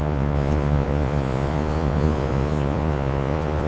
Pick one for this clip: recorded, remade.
remade